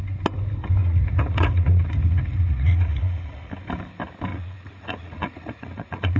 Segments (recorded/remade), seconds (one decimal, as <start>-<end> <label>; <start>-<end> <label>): 0.0-0.8 recorded; 0.8-3.5 remade; 3.5-4.3 recorded; 4.3-6.2 remade